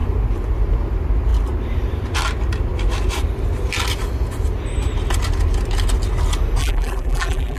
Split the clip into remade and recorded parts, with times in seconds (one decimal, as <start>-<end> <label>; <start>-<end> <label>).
0.0-6.6 recorded; 6.6-7.6 remade